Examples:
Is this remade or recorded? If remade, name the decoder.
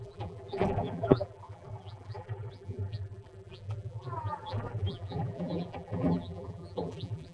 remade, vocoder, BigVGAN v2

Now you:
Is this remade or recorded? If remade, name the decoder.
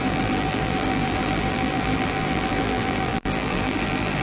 remade, vocoder, BigVGAN v2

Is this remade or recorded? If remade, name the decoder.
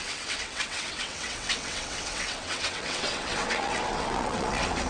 remade, vocoder, WaveNeXt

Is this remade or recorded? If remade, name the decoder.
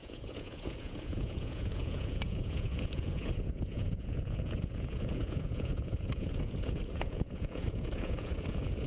remade, vocoder, Vocos